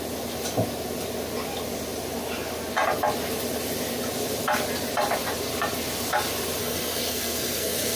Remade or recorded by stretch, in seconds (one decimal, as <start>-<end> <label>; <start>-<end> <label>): 0.0-6.6 recorded; 6.6-8.0 remade